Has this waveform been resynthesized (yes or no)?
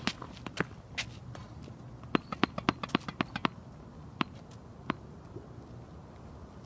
no